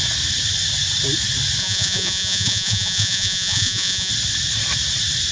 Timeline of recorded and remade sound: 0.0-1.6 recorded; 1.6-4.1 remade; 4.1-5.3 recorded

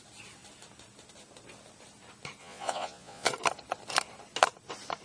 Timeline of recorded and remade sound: 0.0-2.4 recorded; 2.4-3.3 remade; 3.3-5.0 recorded

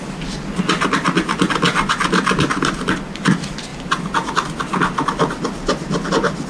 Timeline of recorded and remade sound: 0.0-6.5 recorded

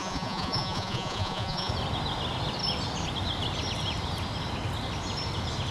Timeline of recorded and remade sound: 0.0-1.7 remade; 1.7-5.7 recorded

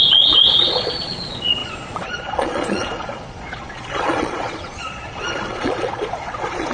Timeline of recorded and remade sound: 0.0-6.7 remade